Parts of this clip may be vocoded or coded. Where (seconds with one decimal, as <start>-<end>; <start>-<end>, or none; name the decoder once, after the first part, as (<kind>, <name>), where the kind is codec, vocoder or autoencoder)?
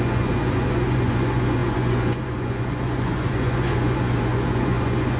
0.0-5.2 (vocoder, Vocos)